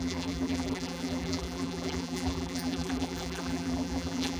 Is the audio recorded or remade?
remade